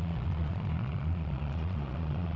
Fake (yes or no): yes